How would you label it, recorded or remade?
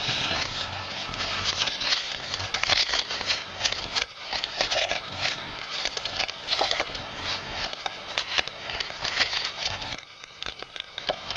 remade